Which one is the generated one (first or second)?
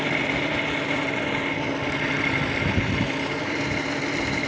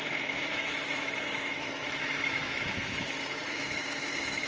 second